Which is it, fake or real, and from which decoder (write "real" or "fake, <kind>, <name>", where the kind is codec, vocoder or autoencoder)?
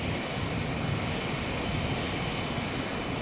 real